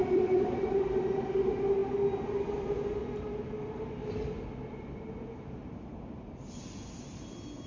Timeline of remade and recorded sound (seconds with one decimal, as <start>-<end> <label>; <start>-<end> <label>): 0.0-1.0 remade; 1.0-7.7 recorded